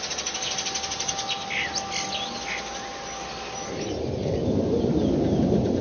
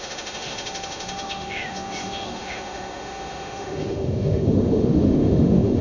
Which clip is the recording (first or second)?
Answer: first